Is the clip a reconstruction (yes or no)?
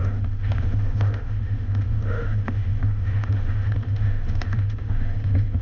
yes